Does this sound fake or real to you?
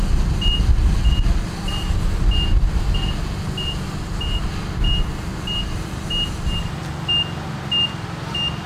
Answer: real